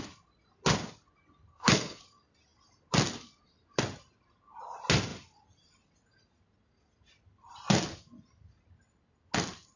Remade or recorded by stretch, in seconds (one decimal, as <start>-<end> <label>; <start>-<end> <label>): 0.0-1.5 recorded; 1.5-2.0 remade; 2.0-9.8 recorded